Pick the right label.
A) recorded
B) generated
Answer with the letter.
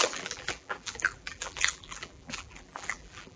B